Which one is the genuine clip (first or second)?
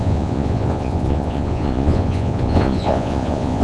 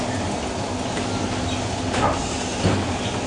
second